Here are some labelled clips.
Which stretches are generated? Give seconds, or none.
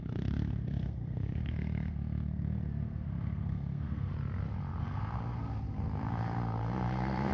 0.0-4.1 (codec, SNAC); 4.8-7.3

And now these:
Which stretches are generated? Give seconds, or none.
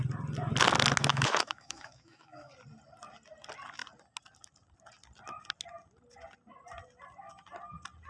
1.1-2.5 (autoencoder, DAC-VAE)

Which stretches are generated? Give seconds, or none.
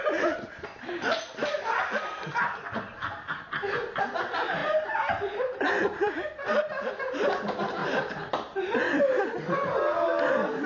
4.6-6.7 (vocoder, BigVGAN v2); 7.8-8.8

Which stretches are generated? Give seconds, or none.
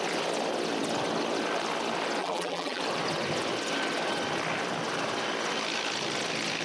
2.2-2.8 (vocoder, BigVGAN v2)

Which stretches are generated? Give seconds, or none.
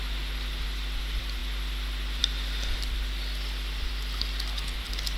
none